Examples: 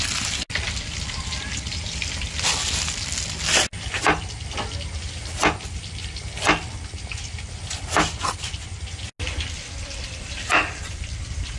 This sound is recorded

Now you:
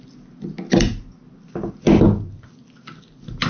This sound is recorded